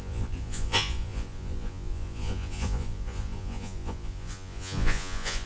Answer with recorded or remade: remade